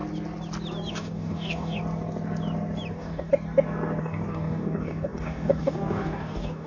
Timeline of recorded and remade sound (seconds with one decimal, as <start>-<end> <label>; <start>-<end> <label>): 0.0-0.9 recorded; 0.9-1.8 remade; 1.8-2.9 recorded; 2.9-3.3 remade; 3.3-4.0 recorded; 4.0-6.7 remade